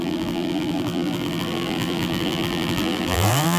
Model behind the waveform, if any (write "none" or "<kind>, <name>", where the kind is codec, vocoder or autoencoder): vocoder, BigVGAN v2